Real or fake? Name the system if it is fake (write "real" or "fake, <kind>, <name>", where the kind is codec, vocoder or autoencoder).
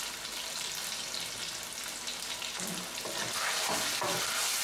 real